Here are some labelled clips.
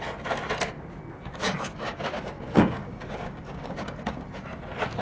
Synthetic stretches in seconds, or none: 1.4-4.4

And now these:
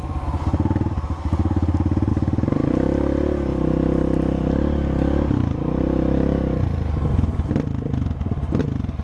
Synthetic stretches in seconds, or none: 2.1-2.7

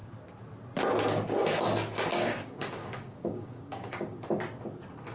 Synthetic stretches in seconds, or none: 2.1-4.2

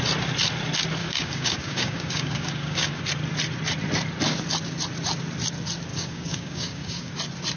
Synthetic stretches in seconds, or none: 1.0-3.0; 5.9-7.1

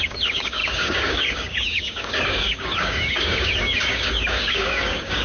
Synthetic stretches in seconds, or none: 0.0-5.2

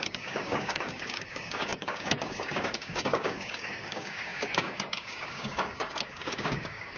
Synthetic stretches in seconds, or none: 0.0-7.0

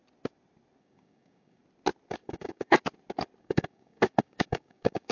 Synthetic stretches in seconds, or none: 0.8-1.6; 2.1-2.8; 3.4-5.1

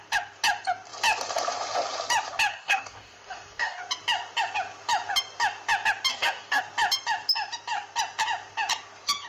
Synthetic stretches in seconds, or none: 2.5-3.8; 6.1-6.6